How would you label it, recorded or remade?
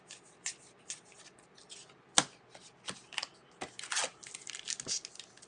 recorded